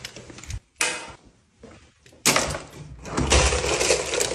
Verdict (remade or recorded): recorded